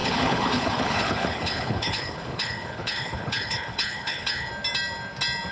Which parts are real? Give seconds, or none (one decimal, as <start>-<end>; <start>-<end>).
4.5-5.5

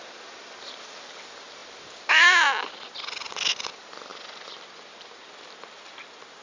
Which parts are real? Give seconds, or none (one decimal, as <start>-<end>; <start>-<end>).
0.0-4.1

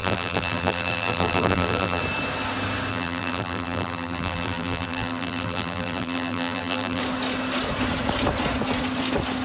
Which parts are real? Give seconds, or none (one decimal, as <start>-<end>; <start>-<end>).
2.0-2.9; 7.0-9.4

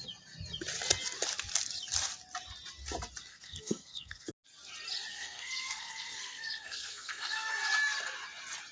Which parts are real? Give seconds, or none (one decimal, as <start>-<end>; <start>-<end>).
0.0-3.3; 4.3-5.1; 7.5-8.7

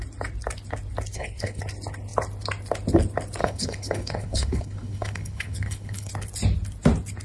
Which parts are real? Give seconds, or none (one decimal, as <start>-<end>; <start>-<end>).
0.0-1.1; 1.6-3.4; 6.1-7.2